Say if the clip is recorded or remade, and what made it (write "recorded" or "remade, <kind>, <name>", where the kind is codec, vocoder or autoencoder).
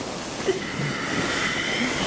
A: recorded